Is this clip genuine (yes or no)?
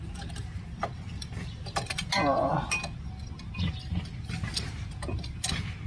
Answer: yes